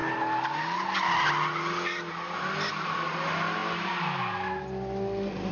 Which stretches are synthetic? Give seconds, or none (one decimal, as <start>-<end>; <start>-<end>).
none